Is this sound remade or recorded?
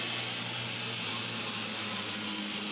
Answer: recorded